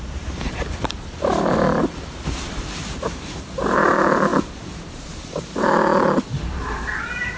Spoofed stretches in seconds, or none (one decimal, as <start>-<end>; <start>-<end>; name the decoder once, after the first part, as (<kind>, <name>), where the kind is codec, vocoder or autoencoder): 0.0-7.4 (vocoder, BigVGAN v2)